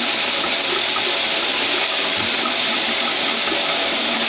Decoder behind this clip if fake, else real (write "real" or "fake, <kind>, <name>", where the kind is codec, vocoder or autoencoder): fake, vocoder, BigVGAN v2